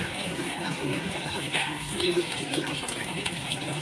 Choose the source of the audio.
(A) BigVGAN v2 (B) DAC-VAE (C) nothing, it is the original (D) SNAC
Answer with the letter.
D